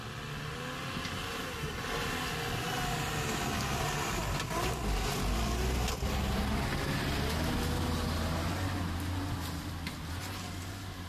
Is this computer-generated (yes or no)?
no